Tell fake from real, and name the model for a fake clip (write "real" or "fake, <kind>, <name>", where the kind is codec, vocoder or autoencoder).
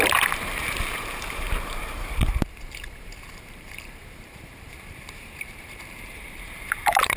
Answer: fake, vocoder, BigVGAN v2